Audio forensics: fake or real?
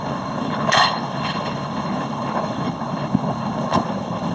fake